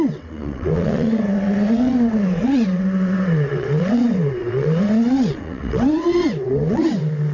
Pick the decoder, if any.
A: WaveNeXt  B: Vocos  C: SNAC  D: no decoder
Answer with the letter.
A